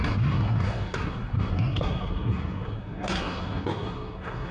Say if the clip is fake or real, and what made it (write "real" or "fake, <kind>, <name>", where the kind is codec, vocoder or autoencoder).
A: fake, codec, SNAC